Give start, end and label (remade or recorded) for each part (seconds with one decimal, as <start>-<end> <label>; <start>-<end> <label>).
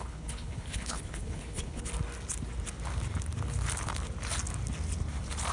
0.0-1.9 remade; 1.9-5.5 recorded